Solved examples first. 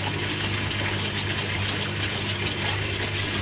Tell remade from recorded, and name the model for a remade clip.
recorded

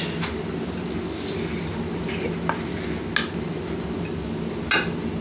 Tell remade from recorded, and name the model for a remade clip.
recorded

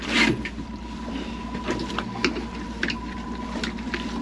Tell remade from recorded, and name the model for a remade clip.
recorded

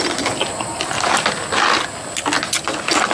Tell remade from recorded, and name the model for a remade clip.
recorded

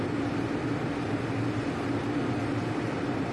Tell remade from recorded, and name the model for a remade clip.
recorded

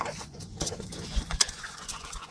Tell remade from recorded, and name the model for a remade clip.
remade, vocoder, Vocos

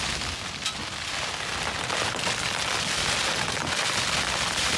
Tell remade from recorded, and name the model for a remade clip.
recorded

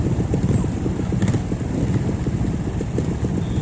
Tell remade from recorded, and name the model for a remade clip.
recorded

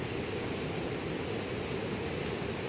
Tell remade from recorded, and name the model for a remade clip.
recorded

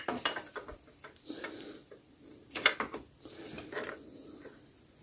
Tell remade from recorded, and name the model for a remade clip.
remade, vocoder, BigVGAN v2